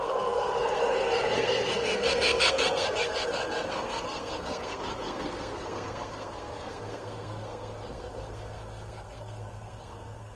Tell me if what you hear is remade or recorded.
remade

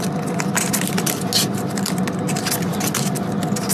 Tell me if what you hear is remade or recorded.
recorded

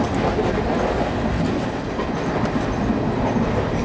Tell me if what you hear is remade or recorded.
recorded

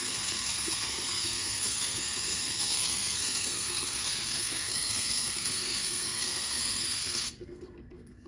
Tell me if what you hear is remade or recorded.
remade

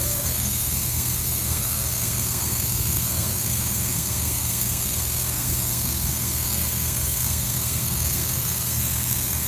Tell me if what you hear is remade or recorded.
remade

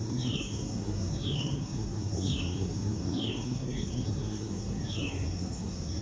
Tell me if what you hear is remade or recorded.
remade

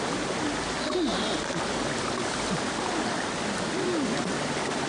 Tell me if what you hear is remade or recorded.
recorded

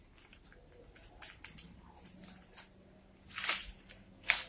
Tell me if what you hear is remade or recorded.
recorded